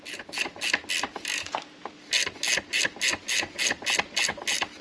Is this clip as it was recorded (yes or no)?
yes